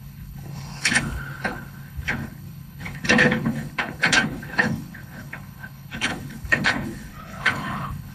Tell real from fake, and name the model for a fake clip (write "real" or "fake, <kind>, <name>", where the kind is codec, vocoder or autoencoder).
fake, codec, HILCodec